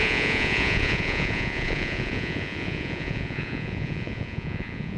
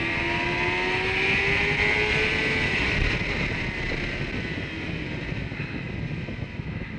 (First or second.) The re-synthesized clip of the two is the first